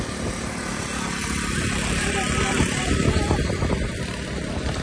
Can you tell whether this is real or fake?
real